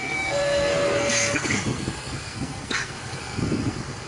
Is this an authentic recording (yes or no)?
no